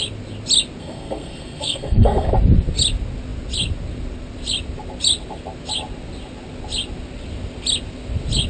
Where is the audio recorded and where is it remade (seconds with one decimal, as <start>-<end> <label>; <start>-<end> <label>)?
0.0-0.8 recorded; 0.8-2.3 remade; 2.3-8.5 recorded